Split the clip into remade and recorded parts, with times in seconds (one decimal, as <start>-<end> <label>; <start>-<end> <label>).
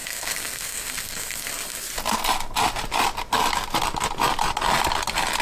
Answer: 0.0-1.9 remade; 1.9-5.4 recorded